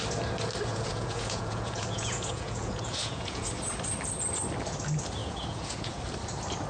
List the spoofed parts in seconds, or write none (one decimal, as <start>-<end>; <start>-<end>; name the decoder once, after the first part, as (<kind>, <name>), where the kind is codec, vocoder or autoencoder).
0.7-3.5 (vocoder, Vocos); 5.2-6.0